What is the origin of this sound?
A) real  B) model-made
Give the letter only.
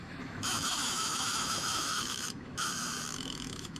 B